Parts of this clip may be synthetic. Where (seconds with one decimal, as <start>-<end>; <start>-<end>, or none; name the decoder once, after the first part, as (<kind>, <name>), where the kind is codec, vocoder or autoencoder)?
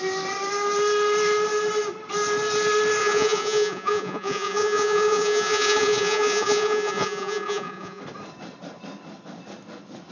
3.0-8.0 (vocoder, Vocos)